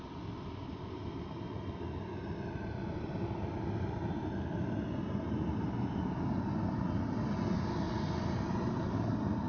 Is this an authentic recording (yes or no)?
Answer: yes